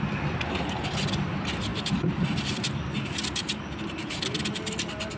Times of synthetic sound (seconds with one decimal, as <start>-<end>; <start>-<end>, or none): none